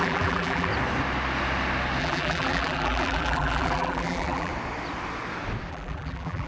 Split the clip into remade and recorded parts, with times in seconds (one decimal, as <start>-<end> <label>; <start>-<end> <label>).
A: 0.0-0.7 remade; 0.7-2.0 recorded; 2.0-4.5 remade; 4.5-5.7 recorded; 5.7-6.5 remade